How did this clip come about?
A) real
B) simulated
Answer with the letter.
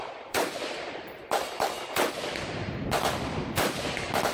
B